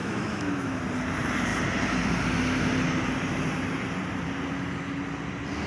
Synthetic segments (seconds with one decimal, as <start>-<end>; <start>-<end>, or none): 0.0-0.8